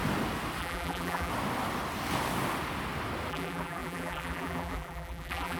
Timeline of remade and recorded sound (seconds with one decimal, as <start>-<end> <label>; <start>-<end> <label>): 0.0-0.6 recorded; 0.6-1.3 remade; 1.3-3.3 recorded; 3.3-5.6 remade